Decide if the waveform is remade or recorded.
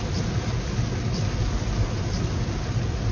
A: recorded